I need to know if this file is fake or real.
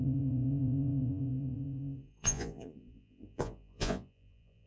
fake